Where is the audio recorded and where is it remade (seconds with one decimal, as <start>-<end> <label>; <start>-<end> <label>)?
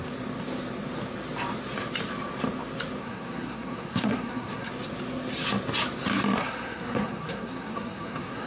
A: 0.0-3.0 recorded; 3.0-4.7 remade; 4.7-6.4 recorded; 6.4-8.5 remade